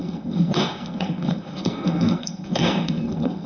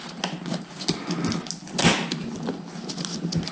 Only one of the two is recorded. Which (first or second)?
second